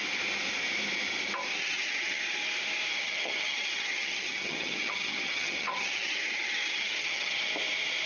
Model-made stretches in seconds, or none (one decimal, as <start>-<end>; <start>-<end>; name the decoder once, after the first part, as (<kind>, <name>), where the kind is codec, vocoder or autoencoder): 1.5-2.2 (vocoder, HiFi-GAN); 2.9-7.5